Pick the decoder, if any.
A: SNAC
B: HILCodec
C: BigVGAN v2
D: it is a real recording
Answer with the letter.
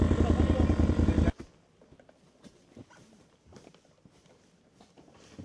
D